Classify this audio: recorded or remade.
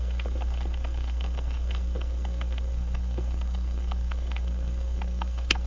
remade